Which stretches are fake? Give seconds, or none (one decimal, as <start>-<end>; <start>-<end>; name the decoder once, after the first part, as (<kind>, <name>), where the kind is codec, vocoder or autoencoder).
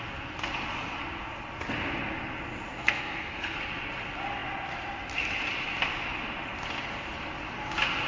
2.7-3.6 (codec, SNAC)